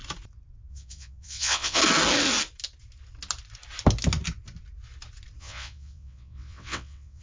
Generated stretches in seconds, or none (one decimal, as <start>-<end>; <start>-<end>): 0.7-1.8; 5.4-7.2